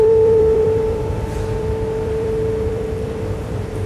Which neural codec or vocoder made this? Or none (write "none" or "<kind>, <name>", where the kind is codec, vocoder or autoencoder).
vocoder, BigVGAN v2